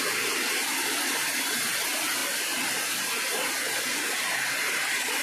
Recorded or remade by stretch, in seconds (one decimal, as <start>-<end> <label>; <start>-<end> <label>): 0.0-2.2 remade; 2.2-3.8 recorded; 3.8-5.2 remade